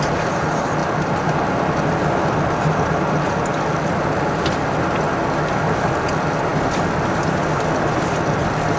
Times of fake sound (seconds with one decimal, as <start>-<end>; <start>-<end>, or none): none